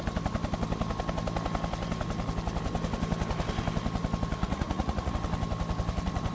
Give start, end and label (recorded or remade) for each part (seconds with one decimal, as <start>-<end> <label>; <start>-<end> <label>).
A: 0.0-4.4 recorded; 4.4-5.1 remade; 5.1-6.3 recorded